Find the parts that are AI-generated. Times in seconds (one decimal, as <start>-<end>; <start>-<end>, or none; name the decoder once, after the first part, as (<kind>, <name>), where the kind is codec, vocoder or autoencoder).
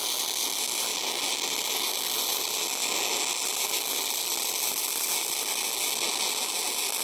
none